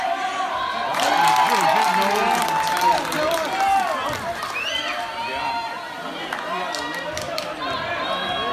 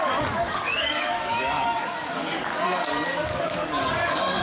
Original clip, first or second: first